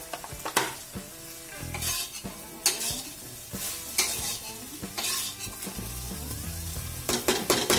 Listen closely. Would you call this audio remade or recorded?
recorded